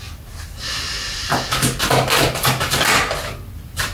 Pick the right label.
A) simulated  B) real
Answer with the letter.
B